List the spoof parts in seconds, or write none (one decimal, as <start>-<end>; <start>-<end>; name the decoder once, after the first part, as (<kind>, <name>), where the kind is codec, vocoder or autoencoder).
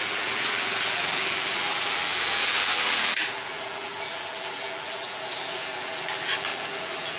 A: 0.0-7.2 (vocoder, BigVGAN v2)